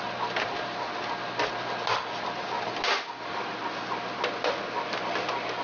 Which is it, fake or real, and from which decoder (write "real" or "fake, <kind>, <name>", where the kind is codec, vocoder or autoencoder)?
real